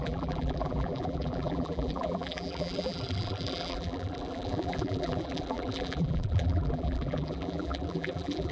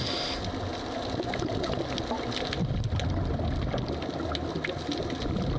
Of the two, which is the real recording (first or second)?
second